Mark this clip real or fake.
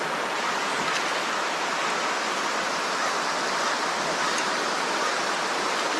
real